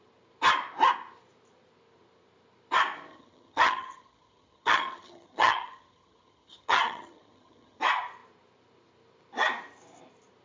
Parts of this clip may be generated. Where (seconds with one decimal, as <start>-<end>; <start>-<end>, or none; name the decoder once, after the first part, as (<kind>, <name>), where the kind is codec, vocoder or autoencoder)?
3.1-7.8 (vocoder, HiFi-GAN)